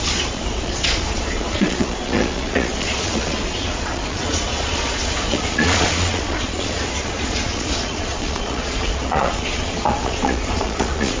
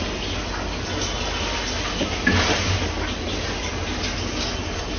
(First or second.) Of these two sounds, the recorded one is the second